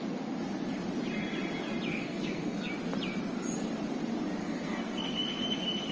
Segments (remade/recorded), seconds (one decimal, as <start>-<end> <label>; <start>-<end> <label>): 0.0-1.9 recorded; 1.9-2.7 remade; 2.7-4.4 recorded; 4.4-5.0 remade; 5.0-5.9 recorded